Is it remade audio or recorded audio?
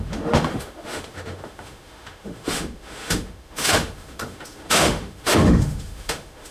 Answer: remade